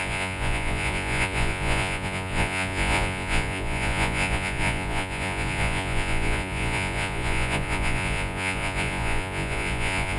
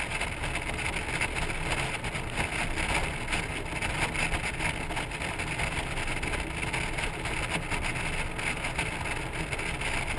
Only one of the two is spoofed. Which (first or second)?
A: first